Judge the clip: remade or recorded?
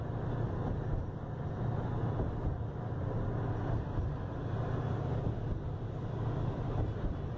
recorded